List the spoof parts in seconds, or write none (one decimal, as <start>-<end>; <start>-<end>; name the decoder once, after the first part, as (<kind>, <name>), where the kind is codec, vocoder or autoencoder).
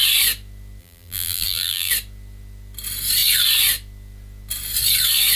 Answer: 0.8-1.9 (vocoder, BigVGAN v2)